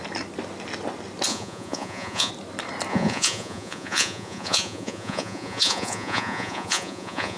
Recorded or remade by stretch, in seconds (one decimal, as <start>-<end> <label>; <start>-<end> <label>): 0.0-1.3 recorded; 1.3-2.3 remade; 2.3-2.9 recorded; 2.9-7.4 remade